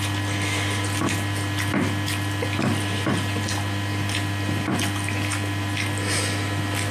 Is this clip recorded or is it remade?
recorded